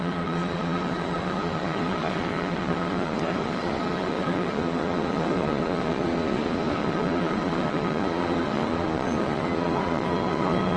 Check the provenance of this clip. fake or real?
fake